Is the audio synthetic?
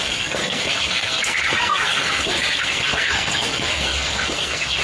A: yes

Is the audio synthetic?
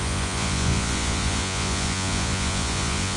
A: yes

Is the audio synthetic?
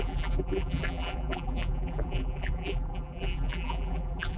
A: yes